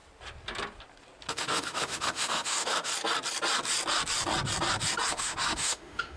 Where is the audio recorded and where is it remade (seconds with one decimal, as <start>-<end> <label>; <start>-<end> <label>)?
0.0-1.3 recorded; 1.3-2.9 remade; 2.9-5.1 recorded; 5.1-6.2 remade